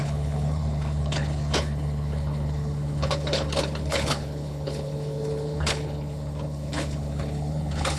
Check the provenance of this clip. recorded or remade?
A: remade